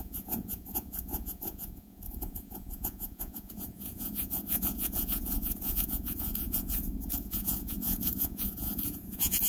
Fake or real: fake